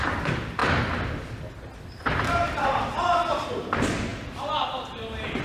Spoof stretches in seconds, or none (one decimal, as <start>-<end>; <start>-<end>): none